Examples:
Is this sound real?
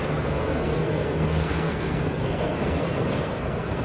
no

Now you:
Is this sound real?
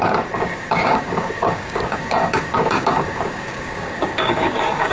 no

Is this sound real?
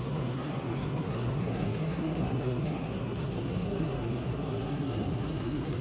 no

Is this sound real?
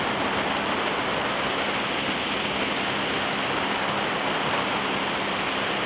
yes